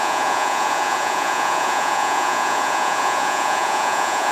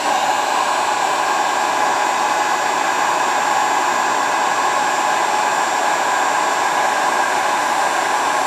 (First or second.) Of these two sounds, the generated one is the first